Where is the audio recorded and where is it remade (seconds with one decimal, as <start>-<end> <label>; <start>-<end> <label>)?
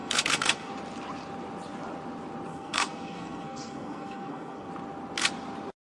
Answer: 0.0-0.7 remade; 0.7-2.5 recorded; 2.5-4.7 remade; 4.7-5.8 recorded